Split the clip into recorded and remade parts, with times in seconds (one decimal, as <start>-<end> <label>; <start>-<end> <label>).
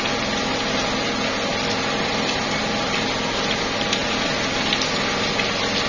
0.0-5.9 recorded